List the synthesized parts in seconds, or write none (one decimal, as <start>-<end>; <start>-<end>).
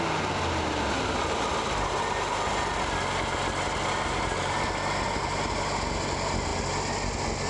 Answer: none